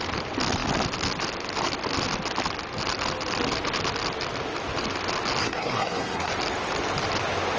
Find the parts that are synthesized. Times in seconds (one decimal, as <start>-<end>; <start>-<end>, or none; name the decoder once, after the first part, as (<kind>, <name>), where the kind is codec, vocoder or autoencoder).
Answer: 5.4-6.3 (codec, SNAC)

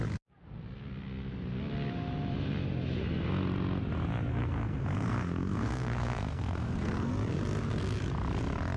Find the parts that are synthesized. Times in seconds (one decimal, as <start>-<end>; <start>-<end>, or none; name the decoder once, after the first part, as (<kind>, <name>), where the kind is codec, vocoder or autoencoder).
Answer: 4.3-7.1 (codec, SNAC)

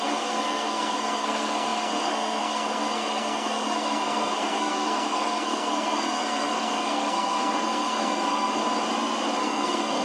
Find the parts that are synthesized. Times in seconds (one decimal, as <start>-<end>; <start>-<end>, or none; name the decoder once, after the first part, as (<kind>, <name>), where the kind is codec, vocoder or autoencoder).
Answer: 0.0-8.6 (codec, SNAC); 9.4-10.0

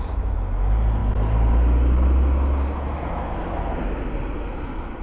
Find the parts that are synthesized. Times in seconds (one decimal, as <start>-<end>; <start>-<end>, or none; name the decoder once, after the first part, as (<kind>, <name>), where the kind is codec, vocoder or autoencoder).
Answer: none

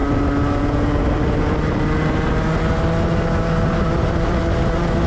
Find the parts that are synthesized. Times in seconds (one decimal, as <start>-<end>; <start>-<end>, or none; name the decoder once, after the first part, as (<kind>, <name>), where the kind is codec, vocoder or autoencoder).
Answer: none

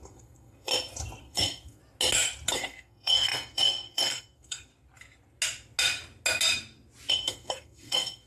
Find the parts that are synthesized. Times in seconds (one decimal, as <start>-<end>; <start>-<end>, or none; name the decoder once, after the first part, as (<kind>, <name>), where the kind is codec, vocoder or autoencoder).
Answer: 0.0-0.7 (codec, SNAC); 1.2-1.8; 2.5-4.7; 7.1-8.3